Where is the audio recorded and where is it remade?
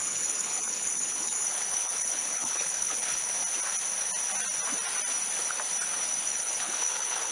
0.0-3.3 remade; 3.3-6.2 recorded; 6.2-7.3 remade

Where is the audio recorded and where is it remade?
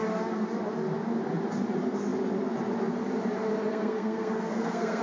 0.0-3.7 recorded; 3.7-5.0 remade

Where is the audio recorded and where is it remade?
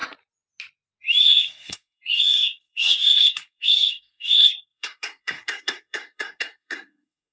0.0-1.2 recorded; 1.2-7.3 remade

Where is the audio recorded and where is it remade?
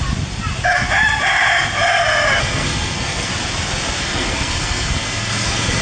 0.0-2.4 recorded; 2.4-3.3 remade; 3.3-4.0 recorded; 4.0-5.8 remade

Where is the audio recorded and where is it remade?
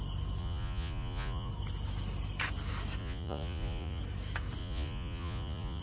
0.0-0.4 recorded; 0.4-1.5 remade; 1.5-3.0 recorded; 3.0-4.0 remade; 4.0-4.6 recorded; 4.6-5.8 remade